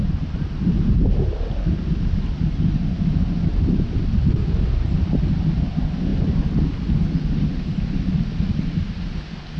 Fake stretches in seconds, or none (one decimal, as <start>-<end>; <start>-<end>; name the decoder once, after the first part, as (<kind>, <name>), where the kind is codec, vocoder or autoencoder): none